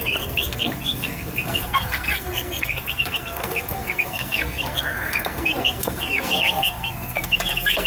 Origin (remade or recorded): remade